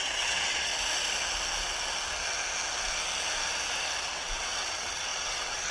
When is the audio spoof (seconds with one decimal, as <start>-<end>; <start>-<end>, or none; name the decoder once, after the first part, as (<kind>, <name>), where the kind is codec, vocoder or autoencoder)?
0.0-0.7 (vocoder, WaveNeXt); 4.1-5.7

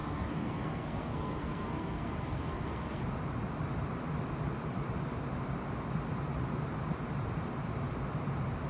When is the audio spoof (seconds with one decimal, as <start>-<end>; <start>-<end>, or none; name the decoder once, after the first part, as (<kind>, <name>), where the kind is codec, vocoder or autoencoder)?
0.0-3.0 (codec, SNAC)

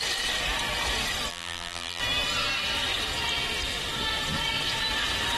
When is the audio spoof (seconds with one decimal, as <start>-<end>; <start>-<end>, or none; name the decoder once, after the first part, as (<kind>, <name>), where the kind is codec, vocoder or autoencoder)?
1.3-2.0 (vocoder, BigVGAN v2)

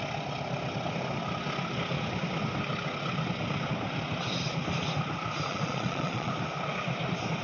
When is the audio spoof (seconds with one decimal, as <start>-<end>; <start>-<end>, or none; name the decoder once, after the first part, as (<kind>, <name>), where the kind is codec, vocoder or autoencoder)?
5.5-6.3 (vocoder, Vocos)